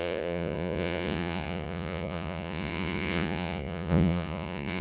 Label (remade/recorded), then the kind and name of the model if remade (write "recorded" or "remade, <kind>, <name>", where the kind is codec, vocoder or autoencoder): remade, vocoder, Vocos